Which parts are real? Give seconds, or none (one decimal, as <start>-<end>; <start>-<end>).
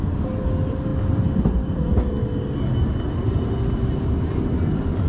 0.0-5.1